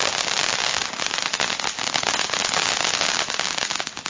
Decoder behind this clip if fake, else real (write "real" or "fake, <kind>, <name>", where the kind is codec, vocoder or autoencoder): real